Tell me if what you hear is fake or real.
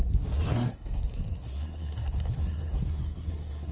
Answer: fake